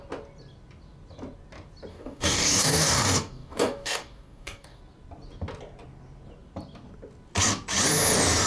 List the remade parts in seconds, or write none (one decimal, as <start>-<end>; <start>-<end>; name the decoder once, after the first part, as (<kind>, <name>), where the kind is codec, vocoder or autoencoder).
1.9-4.8 (codec, DAC)